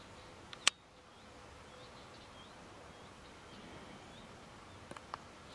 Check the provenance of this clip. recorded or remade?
recorded